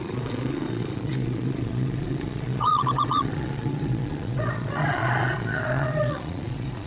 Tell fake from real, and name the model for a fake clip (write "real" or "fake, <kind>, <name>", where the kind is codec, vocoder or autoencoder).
fake, vocoder, Vocos